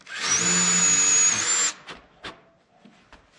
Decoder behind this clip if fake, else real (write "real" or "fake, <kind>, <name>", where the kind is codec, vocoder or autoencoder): real